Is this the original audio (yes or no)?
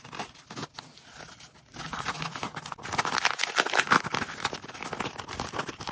yes